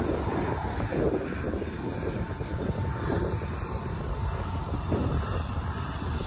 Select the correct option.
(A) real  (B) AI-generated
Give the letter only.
B